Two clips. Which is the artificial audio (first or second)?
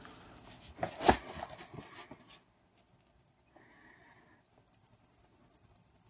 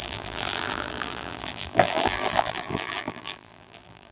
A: second